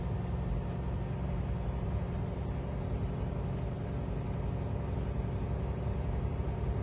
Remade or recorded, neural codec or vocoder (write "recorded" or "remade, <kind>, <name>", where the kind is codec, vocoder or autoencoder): recorded